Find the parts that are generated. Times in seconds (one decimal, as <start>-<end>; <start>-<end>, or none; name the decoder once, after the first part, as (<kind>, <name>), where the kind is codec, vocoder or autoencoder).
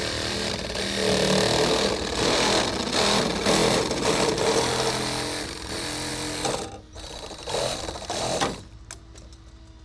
none